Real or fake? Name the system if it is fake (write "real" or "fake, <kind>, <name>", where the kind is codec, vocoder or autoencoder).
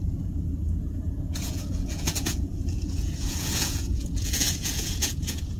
fake, vocoder, Vocos